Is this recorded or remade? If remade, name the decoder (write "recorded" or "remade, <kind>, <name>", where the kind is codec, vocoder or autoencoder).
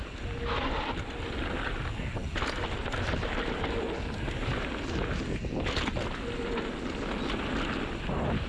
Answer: recorded